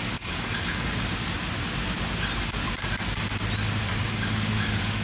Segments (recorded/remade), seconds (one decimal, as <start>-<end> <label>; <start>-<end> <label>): 0.0-1.1 remade; 1.1-4.1 recorded; 4.1-5.0 remade